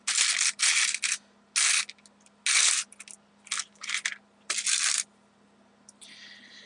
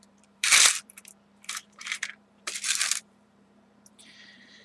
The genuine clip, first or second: first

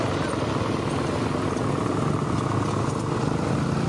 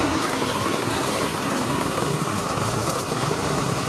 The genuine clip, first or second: first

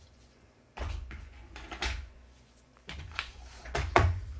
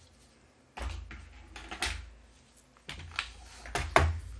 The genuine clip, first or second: second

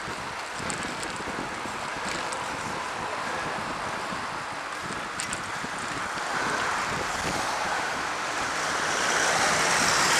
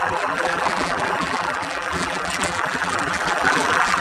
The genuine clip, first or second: first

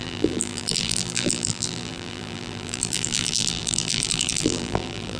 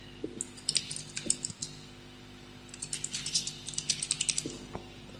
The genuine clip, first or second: second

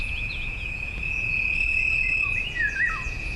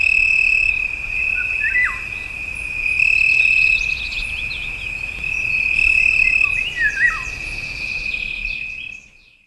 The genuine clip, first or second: second